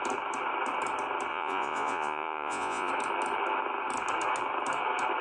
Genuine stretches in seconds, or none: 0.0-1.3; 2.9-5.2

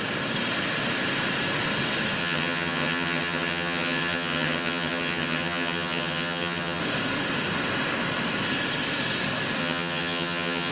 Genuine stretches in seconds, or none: 0.0-2.2; 6.8-9.6

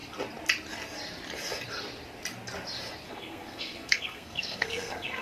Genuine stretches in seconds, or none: 0.0-3.1

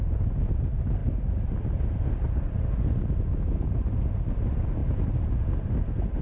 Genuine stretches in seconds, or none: 0.0-6.2